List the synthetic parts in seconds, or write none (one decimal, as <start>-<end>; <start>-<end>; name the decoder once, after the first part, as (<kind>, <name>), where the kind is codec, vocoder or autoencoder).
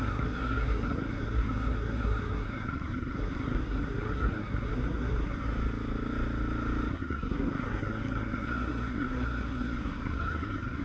0.0-5.5 (codec, SNAC); 6.9-10.8